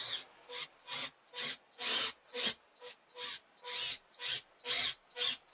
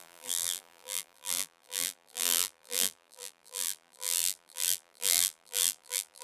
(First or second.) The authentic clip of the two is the first